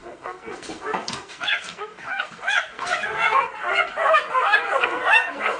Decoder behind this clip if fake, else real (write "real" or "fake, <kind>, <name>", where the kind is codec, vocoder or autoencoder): fake, codec, SNAC